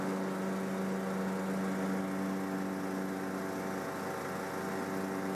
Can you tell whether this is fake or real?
real